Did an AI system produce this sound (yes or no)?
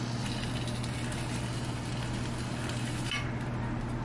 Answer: no